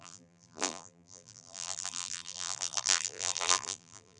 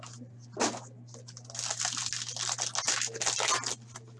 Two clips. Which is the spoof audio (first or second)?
first